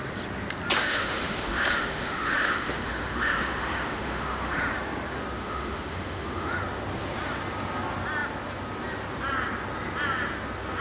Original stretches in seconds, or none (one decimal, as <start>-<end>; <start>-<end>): 0.0-0.8; 4.7-5.4; 6.6-10.8